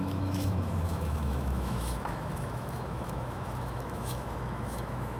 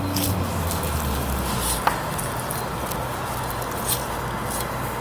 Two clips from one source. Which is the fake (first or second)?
first